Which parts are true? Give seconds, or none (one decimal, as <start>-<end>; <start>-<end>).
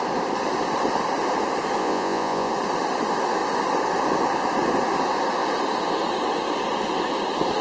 0.0-1.8; 2.5-7.6